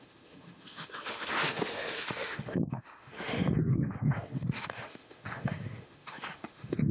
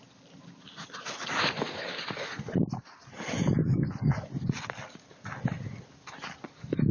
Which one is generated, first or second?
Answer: first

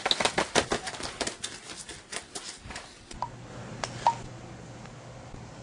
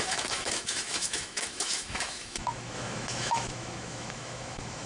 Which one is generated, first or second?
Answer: second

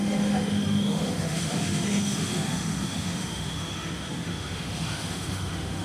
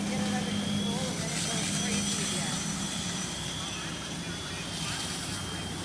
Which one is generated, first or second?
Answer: first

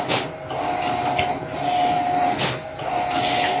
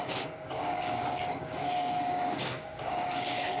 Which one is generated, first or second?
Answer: second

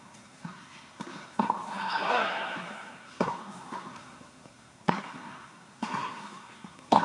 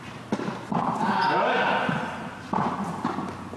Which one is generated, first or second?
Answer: first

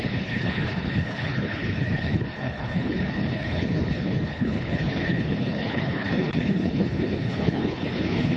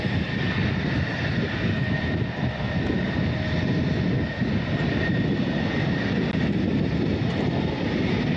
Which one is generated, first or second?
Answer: first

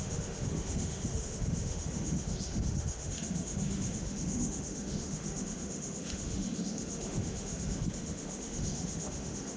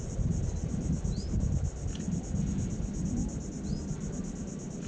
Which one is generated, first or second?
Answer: first